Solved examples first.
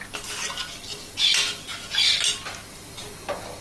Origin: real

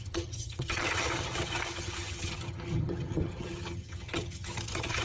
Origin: fake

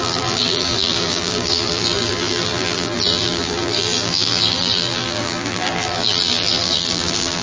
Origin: fake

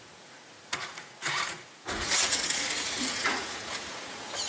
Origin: fake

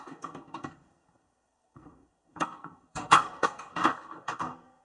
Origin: fake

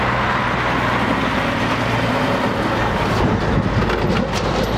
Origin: real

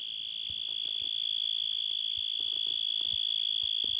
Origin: real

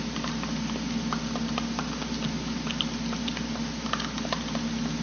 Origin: real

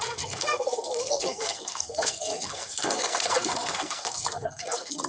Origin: fake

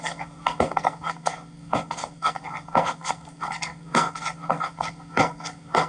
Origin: fake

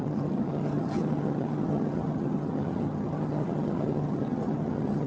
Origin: fake